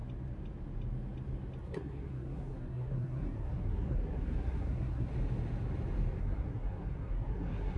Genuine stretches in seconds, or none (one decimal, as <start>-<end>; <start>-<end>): 0.0-1.6; 5.1-6.2

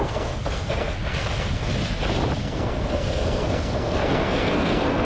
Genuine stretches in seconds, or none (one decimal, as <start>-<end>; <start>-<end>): 1.7-2.4

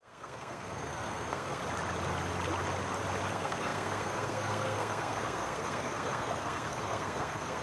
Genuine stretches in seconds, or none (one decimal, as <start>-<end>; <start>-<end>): 1.6-3.3

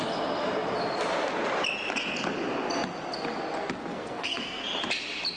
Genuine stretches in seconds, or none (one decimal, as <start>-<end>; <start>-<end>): 0.0-3.9; 4.6-5.4

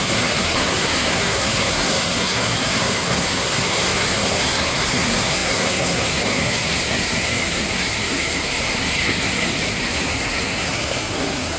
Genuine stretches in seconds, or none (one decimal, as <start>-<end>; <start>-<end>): none

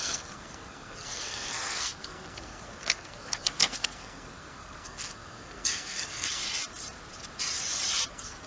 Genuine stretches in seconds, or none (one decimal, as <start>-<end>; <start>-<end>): 6.4-8.1